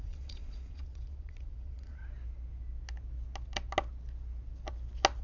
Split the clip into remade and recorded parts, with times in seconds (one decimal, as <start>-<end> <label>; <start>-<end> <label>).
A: 0.0-2.0 remade; 2.0-5.2 recorded